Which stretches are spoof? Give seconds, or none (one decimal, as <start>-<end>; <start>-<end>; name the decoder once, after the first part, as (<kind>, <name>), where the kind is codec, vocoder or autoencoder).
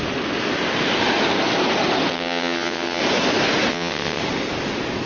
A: 2.1-3.0 (vocoder, WaveNeXt); 3.7-4.2